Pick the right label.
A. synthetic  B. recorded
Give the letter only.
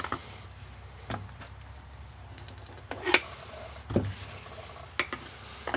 B